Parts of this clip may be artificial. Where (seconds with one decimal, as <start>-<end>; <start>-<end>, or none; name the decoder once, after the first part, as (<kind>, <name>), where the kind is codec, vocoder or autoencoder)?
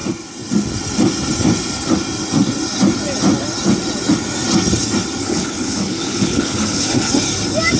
5.2-7.1 (codec, HILCodec)